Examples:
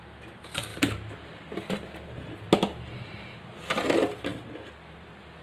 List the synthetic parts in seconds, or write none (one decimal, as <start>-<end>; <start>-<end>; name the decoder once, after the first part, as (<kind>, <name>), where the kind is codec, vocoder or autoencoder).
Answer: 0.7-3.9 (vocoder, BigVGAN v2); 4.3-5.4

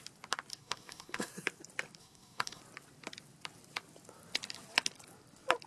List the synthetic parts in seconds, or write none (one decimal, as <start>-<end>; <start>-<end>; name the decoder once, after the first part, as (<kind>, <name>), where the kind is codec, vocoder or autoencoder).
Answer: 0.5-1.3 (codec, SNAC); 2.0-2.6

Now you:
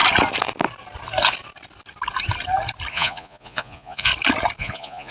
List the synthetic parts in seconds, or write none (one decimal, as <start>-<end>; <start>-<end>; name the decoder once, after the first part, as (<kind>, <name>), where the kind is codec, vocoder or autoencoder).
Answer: 2.9-4.1 (vocoder, Vocos); 4.6-5.1